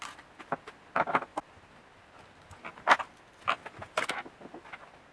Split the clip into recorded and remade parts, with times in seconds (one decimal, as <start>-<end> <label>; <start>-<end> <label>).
0.0-5.1 recorded